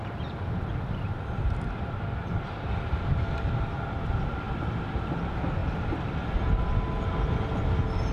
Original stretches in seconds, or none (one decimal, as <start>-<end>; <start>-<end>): 3.1-8.1

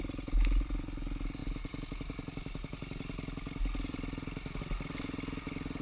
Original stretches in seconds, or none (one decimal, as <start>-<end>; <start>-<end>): 0.0-5.8

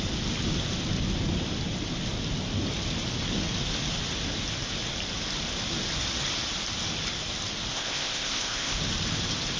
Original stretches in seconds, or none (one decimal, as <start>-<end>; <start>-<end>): 0.0-7.7; 8.8-9.6

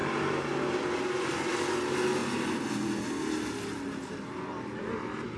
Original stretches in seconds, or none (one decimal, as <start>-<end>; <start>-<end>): 0.0-5.4